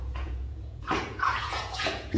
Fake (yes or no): yes